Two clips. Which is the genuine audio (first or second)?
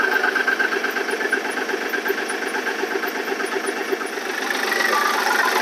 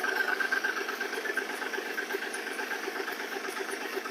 first